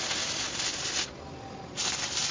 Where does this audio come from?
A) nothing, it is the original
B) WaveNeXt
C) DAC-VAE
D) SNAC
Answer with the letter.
A